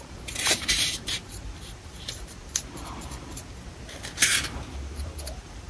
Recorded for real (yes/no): no